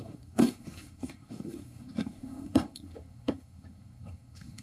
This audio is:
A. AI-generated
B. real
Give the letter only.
A